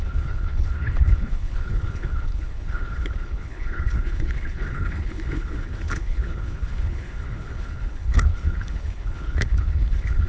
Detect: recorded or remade remade